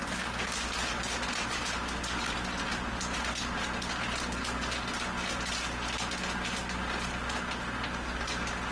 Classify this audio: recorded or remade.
recorded